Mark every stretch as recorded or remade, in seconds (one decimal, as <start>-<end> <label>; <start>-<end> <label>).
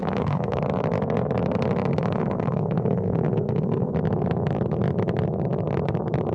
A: 0.0-0.6 remade; 0.6-1.9 recorded; 1.9-3.9 remade; 3.9-6.3 recorded